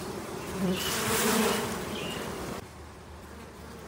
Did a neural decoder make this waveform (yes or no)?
yes